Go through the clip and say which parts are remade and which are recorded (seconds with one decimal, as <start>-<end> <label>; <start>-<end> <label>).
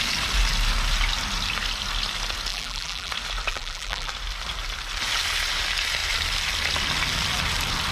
0.0-2.5 recorded; 2.5-3.1 remade; 3.1-3.5 recorded; 3.5-4.1 remade; 4.1-7.9 recorded